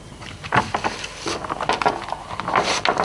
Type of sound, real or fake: real